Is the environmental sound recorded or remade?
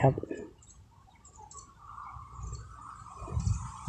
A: remade